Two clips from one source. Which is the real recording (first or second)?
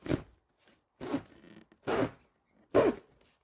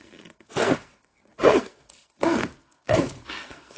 first